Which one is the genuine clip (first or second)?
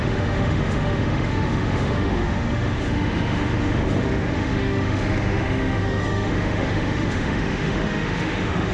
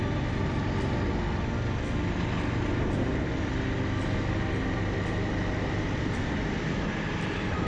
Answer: second